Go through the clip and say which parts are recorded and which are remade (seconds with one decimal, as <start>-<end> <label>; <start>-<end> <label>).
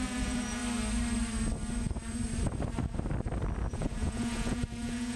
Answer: 0.0-0.6 remade; 0.6-3.7 recorded; 3.7-5.2 remade